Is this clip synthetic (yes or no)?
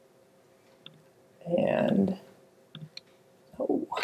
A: no